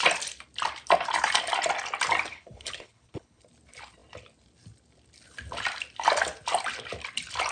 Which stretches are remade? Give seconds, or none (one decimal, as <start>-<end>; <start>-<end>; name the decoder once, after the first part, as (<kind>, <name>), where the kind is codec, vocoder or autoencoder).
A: 2.3-3.4 (codec, HILCodec)